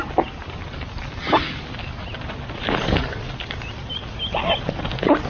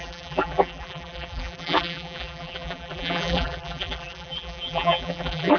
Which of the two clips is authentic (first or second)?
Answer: first